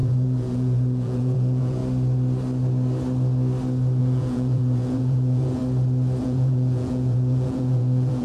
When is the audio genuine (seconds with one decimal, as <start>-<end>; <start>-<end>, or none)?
1.8-4.0; 5.6-6.2